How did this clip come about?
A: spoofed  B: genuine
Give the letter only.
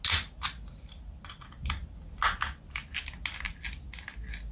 B